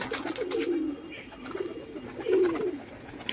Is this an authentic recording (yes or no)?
yes